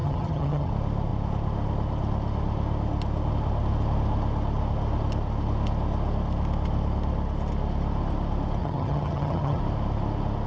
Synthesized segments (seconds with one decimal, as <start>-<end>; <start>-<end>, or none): 0.0-0.7; 8.6-9.6